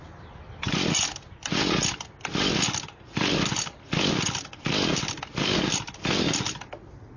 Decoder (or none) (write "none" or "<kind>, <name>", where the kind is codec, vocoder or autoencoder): none